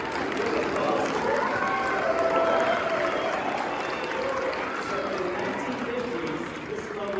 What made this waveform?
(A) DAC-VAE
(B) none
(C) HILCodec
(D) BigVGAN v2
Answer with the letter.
B